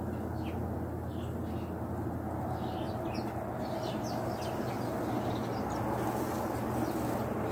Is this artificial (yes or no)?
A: no